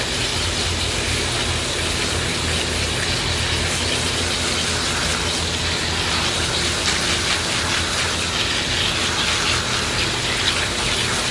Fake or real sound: real